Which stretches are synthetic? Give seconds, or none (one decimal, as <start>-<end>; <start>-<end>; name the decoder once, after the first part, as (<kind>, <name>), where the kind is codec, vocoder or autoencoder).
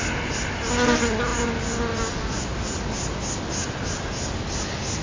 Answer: none